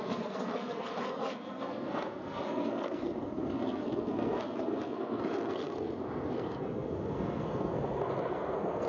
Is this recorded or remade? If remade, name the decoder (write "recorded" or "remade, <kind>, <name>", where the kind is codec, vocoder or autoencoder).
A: remade, codec, SNAC